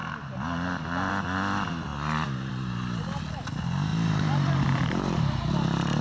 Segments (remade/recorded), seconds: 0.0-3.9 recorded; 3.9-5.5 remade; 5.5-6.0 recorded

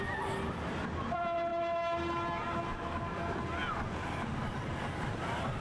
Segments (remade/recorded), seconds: 0.0-5.6 recorded

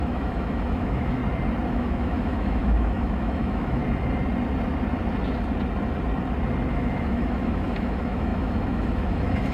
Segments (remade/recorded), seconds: 0.0-1.2 remade; 1.2-1.7 recorded; 1.7-3.8 remade; 3.8-6.7 recorded; 6.7-9.5 remade

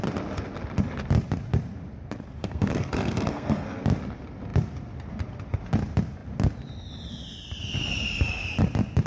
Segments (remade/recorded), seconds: 0.0-2.4 recorded; 2.4-3.8 remade; 3.8-9.1 recorded

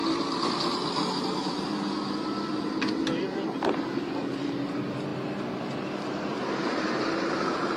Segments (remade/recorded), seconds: 0.0-7.8 recorded

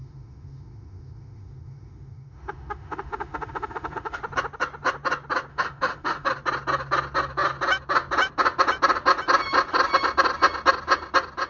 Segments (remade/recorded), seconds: 0.0-4.2 remade; 4.2-5.5 recorded; 5.5-6.3 remade; 6.3-11.5 recorded

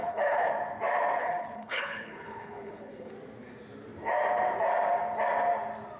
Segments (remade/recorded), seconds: 0.0-0.5 remade; 0.5-1.2 recorded; 1.2-3.1 remade; 3.1-6.0 recorded

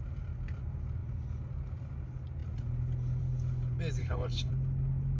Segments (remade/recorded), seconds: 0.0-4.0 recorded; 4.0-4.5 remade; 4.5-5.2 recorded